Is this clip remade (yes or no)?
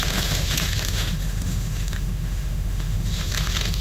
yes